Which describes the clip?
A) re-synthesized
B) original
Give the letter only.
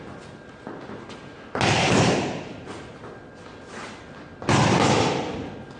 B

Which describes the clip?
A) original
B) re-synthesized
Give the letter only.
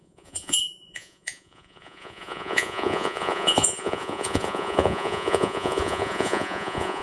B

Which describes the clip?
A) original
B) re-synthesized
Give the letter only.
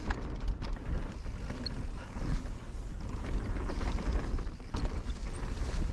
A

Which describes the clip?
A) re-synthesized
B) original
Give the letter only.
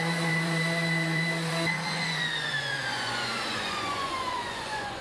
A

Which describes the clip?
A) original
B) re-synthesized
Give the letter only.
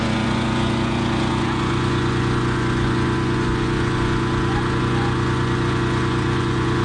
B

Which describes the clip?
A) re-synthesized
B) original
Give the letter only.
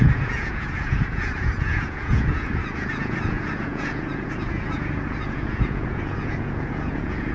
A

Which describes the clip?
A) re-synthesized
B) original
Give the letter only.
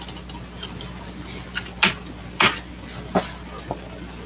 B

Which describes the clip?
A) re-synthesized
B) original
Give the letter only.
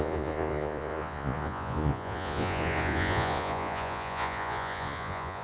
A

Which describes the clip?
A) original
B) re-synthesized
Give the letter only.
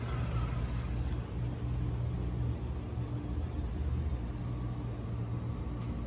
A